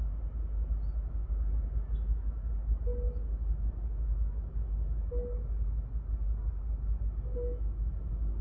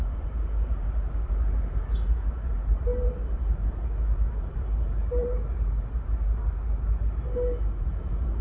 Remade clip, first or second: second